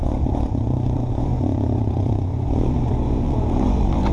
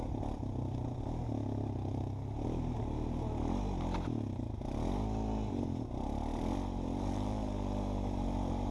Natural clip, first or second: second